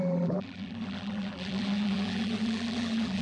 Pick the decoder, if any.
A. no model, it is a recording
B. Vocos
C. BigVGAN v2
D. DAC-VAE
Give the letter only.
C